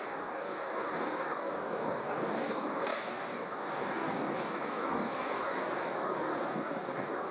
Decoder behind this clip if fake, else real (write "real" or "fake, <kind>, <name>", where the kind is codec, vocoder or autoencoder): fake, codec, DAC